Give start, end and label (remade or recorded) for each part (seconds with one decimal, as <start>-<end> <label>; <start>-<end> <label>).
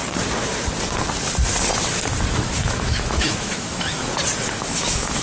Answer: 0.0-2.3 recorded; 2.3-4.0 remade; 4.0-4.6 recorded; 4.6-5.2 remade